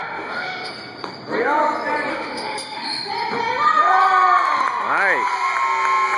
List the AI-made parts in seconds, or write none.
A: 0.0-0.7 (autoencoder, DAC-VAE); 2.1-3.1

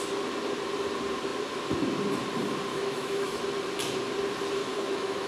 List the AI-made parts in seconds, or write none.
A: 2.7-3.4 (autoencoder, DAC-VAE); 4.6-5.3

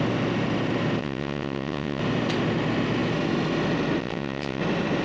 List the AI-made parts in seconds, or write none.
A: 1.0-2.0 (vocoder, WaveNeXt); 4.0-4.6